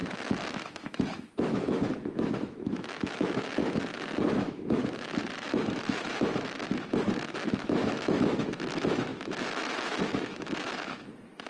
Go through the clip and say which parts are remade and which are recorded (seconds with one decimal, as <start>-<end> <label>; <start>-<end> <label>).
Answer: 0.0-11.5 remade